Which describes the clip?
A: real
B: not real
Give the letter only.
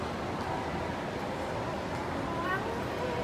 A